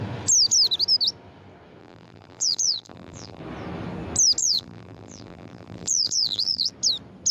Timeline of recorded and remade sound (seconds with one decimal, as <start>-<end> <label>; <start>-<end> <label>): 0.0-1.8 recorded; 1.8-3.4 remade; 3.4-4.4 recorded; 4.4-6.7 remade; 6.7-7.3 recorded